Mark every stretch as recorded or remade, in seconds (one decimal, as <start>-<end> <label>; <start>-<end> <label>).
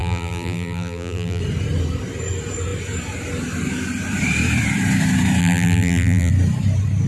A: 0.0-1.4 remade; 1.4-5.4 recorded; 5.4-6.3 remade; 6.3-7.1 recorded